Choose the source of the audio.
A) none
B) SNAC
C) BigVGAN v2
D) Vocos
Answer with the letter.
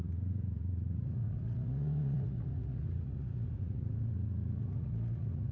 D